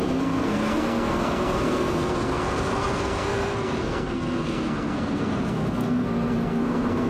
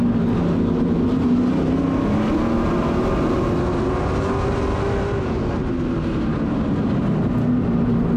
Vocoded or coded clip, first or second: first